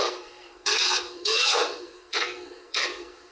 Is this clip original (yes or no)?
no